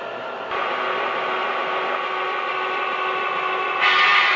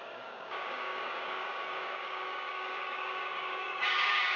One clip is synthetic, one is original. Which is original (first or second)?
first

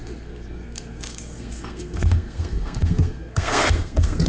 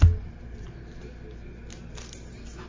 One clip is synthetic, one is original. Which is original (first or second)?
second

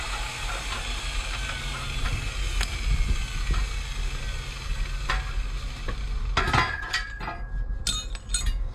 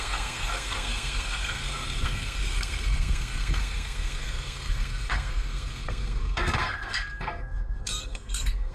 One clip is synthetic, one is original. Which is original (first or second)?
first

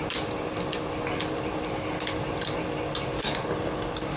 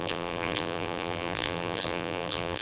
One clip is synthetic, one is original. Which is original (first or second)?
first